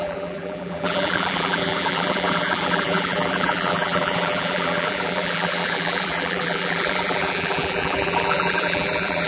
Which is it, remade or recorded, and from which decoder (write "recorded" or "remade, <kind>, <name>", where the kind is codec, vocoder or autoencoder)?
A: remade, vocoder, BigVGAN v2